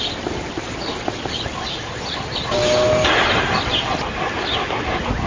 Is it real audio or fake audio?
real